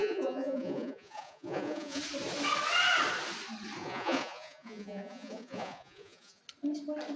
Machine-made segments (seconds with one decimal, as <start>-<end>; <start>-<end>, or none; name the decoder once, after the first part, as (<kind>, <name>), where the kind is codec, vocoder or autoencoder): 0.0-2.0 (vocoder, Vocos); 3.8-6.4